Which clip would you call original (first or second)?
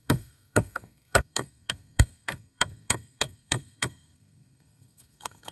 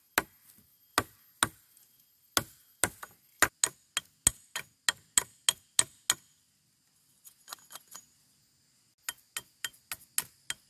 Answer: second